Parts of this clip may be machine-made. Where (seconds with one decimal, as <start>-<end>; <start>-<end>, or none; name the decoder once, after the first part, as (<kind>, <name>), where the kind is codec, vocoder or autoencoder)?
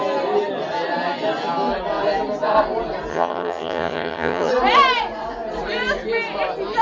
3.1-4.5 (vocoder, HiFi-GAN)